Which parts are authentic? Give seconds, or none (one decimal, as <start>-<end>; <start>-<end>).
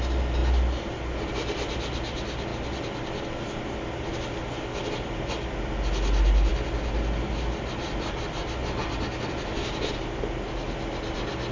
0.0-11.5